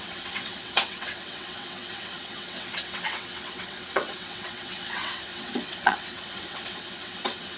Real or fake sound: fake